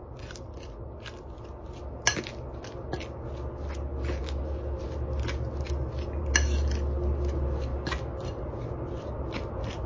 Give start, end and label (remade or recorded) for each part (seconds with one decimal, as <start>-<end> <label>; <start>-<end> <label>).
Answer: 0.0-9.9 recorded